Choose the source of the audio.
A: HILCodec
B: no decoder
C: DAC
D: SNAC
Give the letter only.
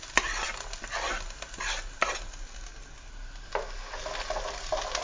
B